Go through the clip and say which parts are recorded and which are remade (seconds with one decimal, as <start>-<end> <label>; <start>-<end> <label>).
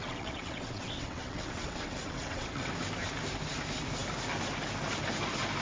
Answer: 0.0-2.7 remade; 2.7-5.6 recorded